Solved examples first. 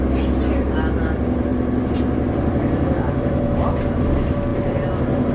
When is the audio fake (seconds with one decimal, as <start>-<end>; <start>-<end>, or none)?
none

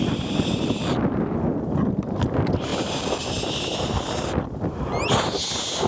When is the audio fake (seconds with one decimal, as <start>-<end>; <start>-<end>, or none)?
none

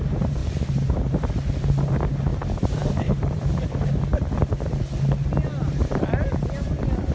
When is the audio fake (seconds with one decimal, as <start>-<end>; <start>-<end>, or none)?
0.4-1.3; 2.3-3.5

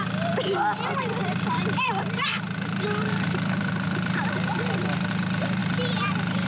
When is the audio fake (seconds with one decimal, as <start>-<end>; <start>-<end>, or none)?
1.2-5.1

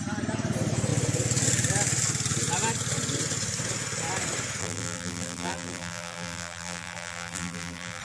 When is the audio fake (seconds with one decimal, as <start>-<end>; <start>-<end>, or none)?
4.6-8.0

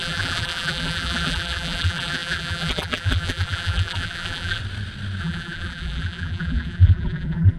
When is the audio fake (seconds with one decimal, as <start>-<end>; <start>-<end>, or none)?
0.0-4.6; 5.2-7.6